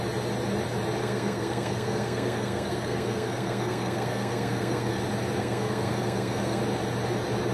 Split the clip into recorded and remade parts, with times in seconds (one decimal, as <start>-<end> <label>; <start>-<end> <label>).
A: 0.0-1.0 recorded; 1.0-5.0 remade; 5.0-5.4 recorded; 5.4-6.6 remade; 6.6-7.5 recorded